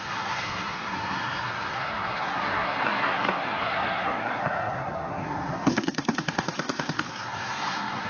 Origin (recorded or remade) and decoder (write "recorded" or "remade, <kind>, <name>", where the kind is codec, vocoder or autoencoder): remade, codec, SNAC